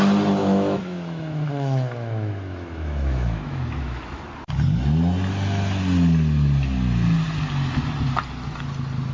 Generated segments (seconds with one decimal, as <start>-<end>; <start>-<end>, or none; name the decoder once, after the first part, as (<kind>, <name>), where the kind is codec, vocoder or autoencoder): 0.4-4.2 (autoencoder, DAC-VAE)